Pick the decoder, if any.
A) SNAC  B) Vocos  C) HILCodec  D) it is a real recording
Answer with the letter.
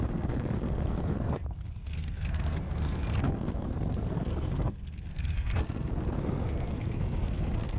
A